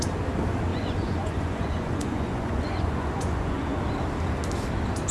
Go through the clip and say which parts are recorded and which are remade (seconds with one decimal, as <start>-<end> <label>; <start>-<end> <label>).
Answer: 0.0-0.7 recorded; 0.7-3.8 remade; 3.8-5.1 recorded